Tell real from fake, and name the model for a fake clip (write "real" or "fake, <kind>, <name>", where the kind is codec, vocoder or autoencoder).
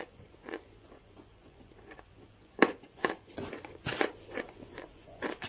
fake, vocoder, Vocos